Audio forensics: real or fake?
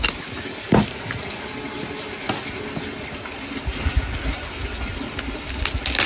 real